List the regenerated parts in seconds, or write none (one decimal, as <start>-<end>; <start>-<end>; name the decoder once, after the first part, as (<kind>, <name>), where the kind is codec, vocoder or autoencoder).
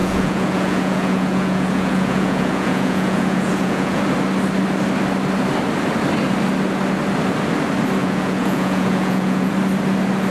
0.0-4.0 (vocoder, Vocos); 8.0-9.5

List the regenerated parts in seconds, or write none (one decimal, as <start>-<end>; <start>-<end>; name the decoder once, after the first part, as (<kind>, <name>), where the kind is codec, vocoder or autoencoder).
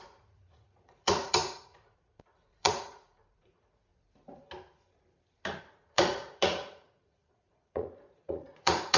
0.0-3.9 (vocoder, Vocos); 5.6-9.0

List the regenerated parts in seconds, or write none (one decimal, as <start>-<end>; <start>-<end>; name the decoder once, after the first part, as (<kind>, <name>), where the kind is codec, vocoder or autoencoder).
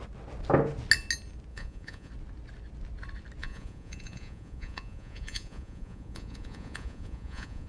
1.5-2.1 (vocoder, Vocos); 3.4-7.7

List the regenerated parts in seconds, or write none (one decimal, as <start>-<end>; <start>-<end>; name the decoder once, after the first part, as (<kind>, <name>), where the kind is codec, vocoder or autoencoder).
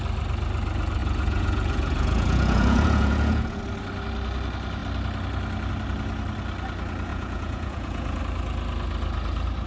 1.0-3.6 (vocoder, Vocos); 7.1-8.2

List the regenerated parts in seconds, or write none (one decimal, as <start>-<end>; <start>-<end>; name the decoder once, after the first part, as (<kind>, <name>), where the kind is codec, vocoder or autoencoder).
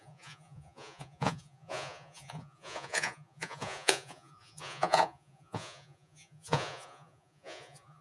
0.0-8.0 (vocoder, Vocos)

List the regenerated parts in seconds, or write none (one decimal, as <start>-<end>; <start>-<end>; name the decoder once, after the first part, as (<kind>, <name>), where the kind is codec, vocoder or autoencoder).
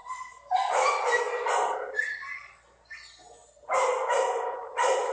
none